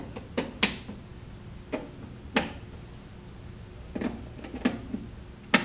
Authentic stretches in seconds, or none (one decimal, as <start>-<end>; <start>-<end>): 0.0-5.6